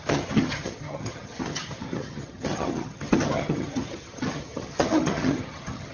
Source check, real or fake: fake